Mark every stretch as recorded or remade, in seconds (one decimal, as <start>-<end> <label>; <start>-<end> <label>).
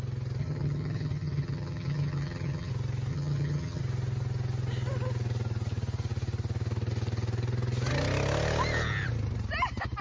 0.0-0.4 recorded; 0.4-2.7 remade; 2.7-3.1 recorded; 3.1-3.8 remade; 3.8-10.0 recorded